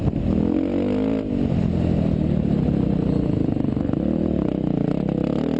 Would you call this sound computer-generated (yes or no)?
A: no